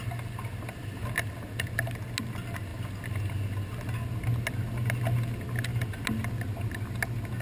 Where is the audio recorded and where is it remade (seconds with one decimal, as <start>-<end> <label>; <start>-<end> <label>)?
0.0-7.4 recorded